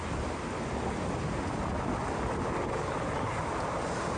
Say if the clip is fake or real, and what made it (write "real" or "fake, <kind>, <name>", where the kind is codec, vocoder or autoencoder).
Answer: real